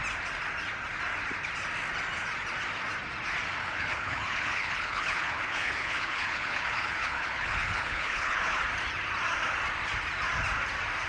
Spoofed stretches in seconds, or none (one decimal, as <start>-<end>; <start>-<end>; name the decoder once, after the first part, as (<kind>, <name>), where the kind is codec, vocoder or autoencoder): 3.6-8.6 (codec, HILCodec)